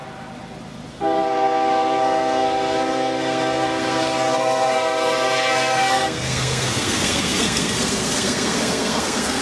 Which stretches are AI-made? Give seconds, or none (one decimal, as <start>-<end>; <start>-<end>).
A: 0.9-9.4

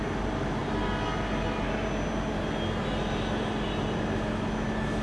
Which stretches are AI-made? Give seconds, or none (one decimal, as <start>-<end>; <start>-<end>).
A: none